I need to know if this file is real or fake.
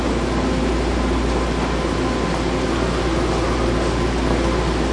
real